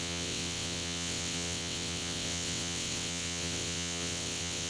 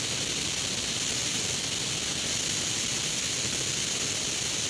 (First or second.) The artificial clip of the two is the first